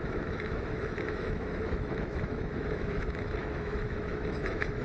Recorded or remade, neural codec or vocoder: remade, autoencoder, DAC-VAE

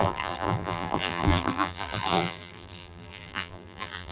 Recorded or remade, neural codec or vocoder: remade, vocoder, BigVGAN v2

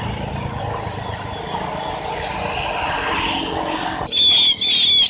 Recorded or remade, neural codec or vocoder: recorded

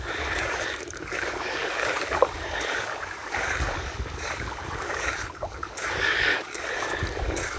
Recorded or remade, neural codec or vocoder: remade, codec, DAC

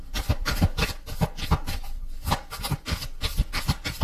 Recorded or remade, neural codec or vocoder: remade, vocoder, BigVGAN v2